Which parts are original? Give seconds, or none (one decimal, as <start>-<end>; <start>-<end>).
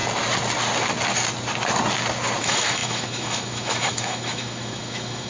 0.0-2.4